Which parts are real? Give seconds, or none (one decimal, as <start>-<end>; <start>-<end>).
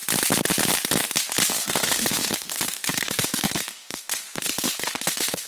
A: 0.0-1.5